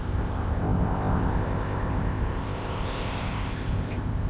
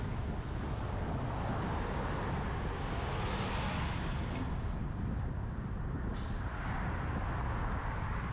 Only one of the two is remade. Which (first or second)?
first